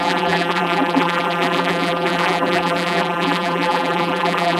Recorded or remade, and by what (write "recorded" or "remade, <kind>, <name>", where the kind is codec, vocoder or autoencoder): remade, vocoder, BigVGAN v2